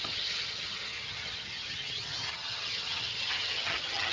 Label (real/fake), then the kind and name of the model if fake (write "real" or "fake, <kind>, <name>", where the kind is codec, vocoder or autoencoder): fake, vocoder, HiFi-GAN